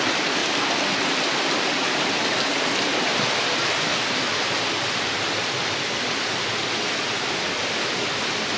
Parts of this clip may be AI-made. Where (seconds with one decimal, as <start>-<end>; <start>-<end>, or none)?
none